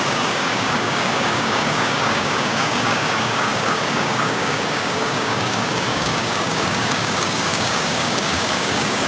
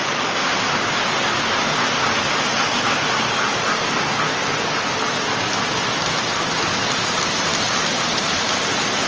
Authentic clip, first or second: second